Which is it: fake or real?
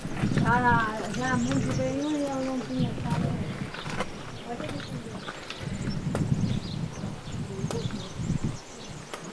real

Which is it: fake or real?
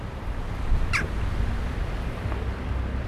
real